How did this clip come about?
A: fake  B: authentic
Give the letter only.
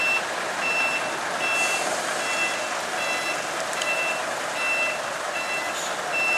B